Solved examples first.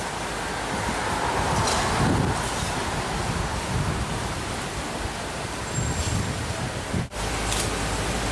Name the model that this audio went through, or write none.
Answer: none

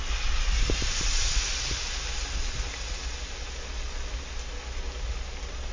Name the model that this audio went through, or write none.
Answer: none